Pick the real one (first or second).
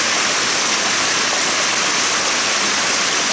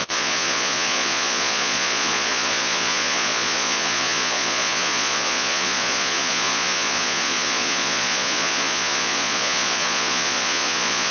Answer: first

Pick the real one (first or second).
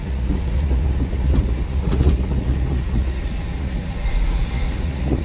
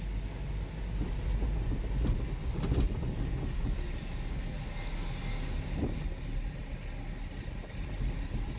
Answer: second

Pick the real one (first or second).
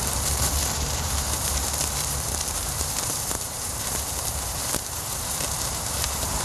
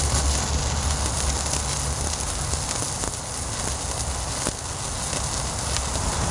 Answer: second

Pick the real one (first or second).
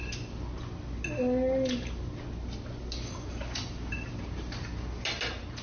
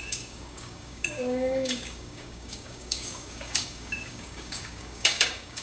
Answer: first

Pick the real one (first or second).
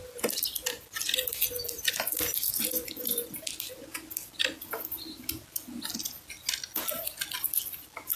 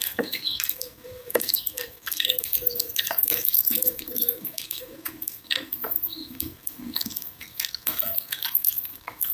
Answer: first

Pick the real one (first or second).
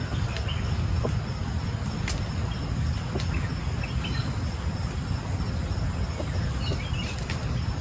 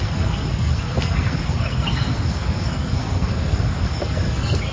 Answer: first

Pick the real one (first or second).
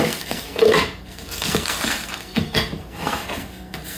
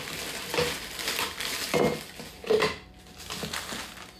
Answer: second